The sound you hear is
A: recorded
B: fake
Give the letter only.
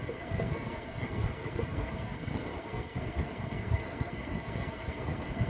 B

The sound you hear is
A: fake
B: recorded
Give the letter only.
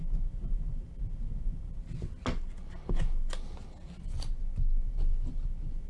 B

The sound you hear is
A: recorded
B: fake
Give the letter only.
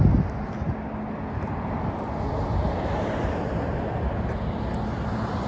A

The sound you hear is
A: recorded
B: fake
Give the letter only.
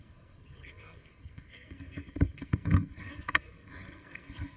B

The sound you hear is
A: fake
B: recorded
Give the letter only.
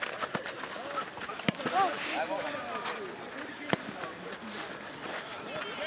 B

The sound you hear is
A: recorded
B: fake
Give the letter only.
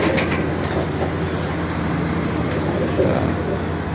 A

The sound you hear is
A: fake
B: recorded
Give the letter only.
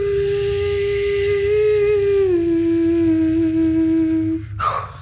B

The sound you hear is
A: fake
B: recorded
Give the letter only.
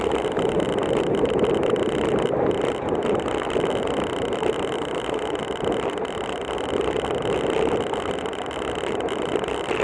B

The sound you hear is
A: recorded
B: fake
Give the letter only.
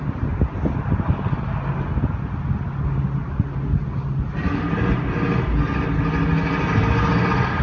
A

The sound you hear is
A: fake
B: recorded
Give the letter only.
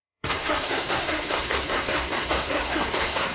A